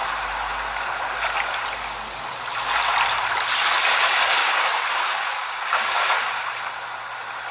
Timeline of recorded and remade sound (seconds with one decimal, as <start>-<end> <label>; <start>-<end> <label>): 0.0-4.4 recorded; 4.4-6.0 remade; 6.0-7.5 recorded